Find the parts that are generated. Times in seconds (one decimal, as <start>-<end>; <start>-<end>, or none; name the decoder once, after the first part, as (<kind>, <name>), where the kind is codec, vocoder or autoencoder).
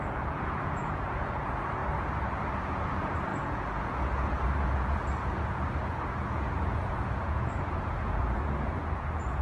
0.0-1.8 (vocoder, Vocos); 2.6-9.4